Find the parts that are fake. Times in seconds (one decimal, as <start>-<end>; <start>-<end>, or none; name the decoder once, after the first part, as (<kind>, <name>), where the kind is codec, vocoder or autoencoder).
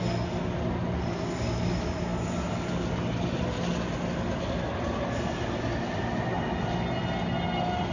none